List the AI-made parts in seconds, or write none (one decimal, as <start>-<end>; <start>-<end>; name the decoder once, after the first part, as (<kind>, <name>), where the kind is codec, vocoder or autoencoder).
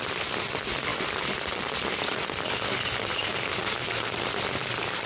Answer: 0.0-5.1 (vocoder, BigVGAN v2)